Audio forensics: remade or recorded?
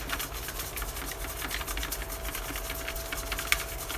recorded